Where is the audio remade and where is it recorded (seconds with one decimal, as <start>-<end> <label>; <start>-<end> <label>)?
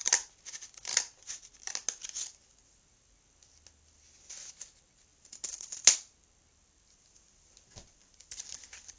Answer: 0.0-0.9 recorded; 0.9-1.5 remade; 1.5-9.0 recorded